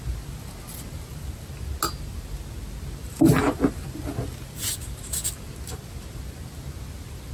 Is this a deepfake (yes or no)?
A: no